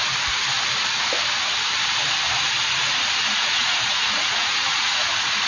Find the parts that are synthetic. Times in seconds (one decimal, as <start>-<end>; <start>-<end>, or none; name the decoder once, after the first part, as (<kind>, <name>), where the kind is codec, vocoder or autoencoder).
3.3-5.5 (vocoder, Vocos)